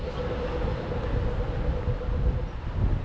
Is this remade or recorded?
recorded